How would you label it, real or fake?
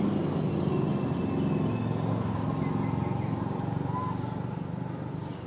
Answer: real